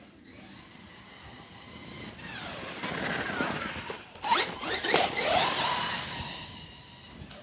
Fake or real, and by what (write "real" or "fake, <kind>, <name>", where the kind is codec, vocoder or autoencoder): real